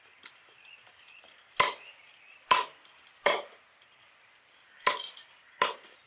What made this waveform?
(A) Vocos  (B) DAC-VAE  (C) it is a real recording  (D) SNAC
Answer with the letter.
C